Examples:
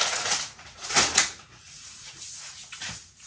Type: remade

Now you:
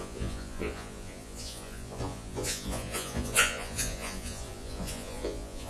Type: remade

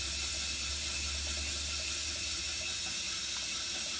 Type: recorded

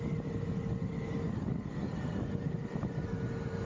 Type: recorded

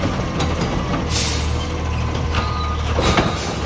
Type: recorded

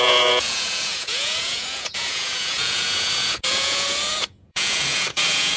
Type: remade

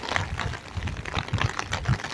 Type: recorded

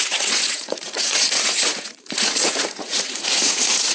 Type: remade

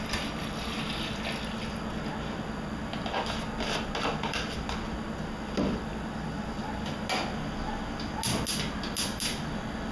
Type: recorded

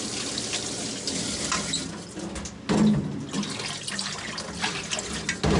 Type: recorded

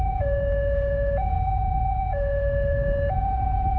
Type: remade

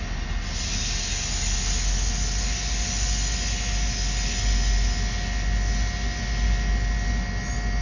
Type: recorded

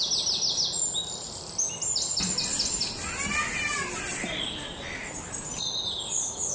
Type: recorded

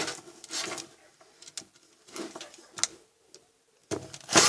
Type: recorded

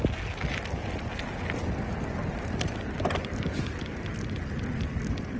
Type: recorded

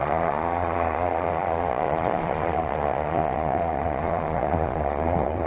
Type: remade